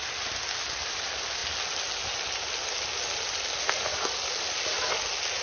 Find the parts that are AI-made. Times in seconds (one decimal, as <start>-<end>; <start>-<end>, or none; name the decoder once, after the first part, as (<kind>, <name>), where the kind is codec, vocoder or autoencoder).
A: none